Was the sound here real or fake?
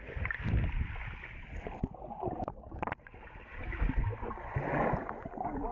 real